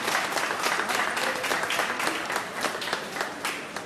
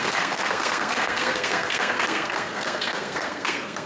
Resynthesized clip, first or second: second